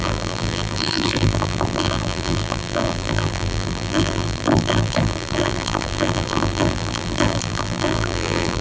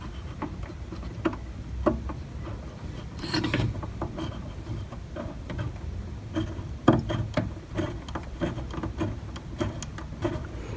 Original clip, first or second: second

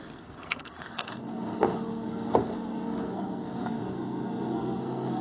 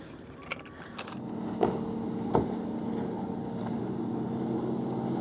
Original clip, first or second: second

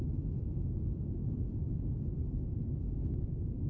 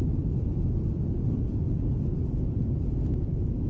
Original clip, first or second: first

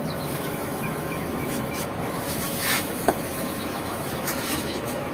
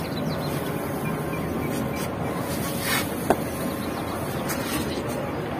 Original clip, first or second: second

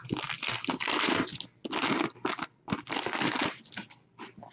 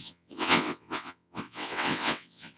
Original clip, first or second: first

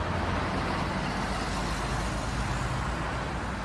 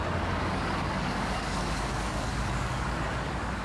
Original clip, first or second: first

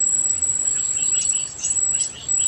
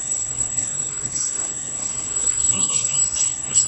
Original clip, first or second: first